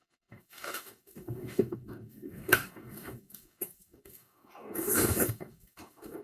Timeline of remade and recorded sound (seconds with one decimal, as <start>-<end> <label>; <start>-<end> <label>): 0.0-6.2 remade